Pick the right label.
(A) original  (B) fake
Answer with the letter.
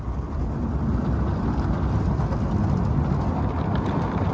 A